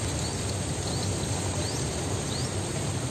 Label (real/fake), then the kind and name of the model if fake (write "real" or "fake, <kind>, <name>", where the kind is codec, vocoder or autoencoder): real